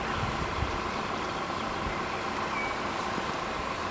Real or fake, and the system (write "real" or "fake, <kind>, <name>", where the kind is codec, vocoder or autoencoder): real